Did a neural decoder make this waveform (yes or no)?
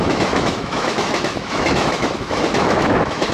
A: yes